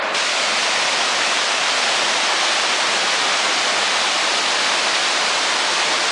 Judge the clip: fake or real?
real